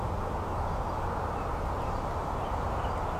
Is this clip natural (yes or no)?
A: yes